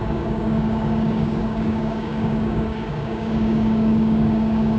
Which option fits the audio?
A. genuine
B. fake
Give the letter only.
B